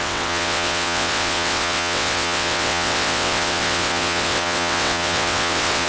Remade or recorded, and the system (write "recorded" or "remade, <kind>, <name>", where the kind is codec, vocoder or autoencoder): remade, vocoder, WaveNeXt